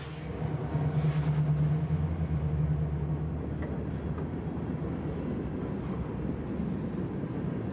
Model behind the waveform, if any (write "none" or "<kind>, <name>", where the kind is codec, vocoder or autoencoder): none